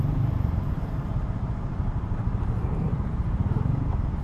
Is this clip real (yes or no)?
no